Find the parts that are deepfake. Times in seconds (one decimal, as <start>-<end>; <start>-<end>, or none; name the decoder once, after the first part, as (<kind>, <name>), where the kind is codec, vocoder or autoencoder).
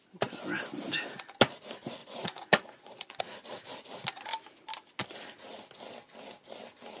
2.0-3.2 (vocoder, Vocos)